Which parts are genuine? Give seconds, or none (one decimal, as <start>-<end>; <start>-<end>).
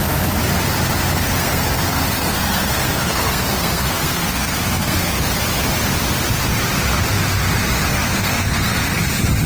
0.0-1.1; 5.2-7.9; 9.0-9.5